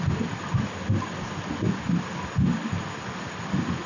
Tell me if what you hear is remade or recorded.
recorded